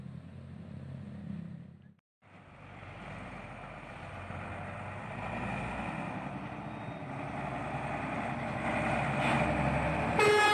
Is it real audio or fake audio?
real